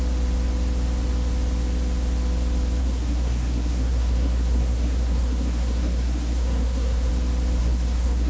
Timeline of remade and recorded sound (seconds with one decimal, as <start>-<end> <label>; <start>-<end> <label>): 0.0-2.8 recorded; 2.8-7.1 remade; 7.1-7.6 recorded; 7.6-8.3 remade